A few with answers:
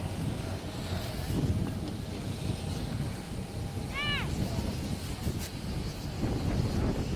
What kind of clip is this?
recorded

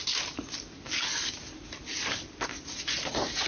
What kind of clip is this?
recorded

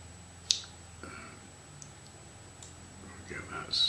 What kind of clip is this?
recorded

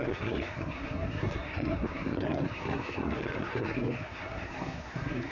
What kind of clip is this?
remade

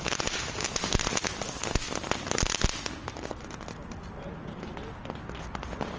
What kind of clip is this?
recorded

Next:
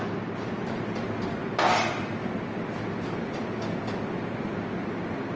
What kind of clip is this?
recorded